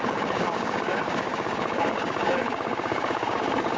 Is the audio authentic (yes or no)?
no